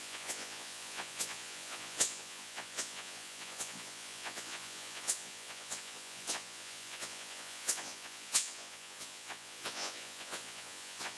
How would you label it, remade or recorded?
remade